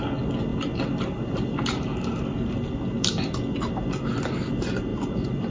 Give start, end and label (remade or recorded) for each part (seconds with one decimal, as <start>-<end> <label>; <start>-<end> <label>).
0.0-0.5 recorded; 0.5-3.4 remade; 3.4-4.9 recorded; 4.9-5.5 remade

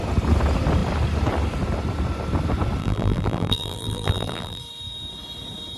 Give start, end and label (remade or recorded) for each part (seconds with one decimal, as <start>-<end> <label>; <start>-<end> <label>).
0.0-2.8 recorded; 2.8-4.6 remade; 4.6-5.8 recorded

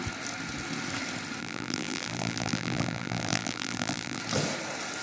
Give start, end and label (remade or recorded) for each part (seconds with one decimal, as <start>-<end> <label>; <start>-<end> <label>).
0.0-1.4 recorded; 1.4-4.2 remade; 4.2-5.0 recorded

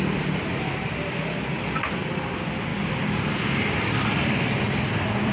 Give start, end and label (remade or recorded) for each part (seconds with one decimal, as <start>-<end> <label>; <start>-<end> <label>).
0.0-2.7 recorded; 2.7-5.3 remade

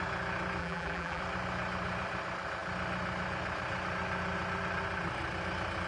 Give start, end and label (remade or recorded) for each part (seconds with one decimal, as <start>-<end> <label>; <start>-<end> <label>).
0.0-0.6 recorded; 0.6-1.2 remade; 1.2-5.9 recorded